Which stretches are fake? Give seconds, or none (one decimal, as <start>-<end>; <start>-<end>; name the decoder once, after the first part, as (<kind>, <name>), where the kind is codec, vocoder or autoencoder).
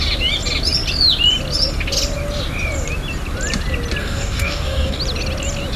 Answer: 4.0-5.0 (codec, DAC)